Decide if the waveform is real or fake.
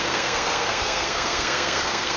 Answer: fake